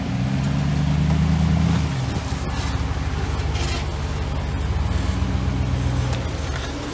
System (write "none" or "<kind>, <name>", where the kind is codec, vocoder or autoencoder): none